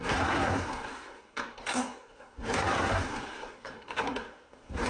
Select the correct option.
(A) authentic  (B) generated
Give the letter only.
B